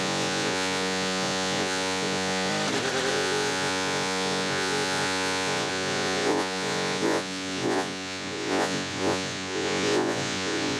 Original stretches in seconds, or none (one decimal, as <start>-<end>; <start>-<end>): 2.5-3.1

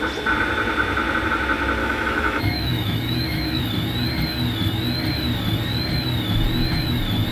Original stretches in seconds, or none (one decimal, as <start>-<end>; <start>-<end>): 0.0-1.8; 3.6-7.3